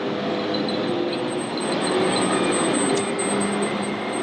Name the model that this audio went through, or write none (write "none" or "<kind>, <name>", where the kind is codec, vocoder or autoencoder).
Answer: none